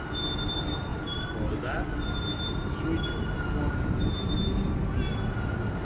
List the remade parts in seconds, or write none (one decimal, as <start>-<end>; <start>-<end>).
0.9-4.4